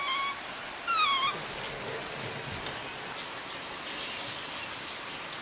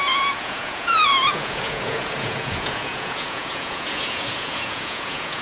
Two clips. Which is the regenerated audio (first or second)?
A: second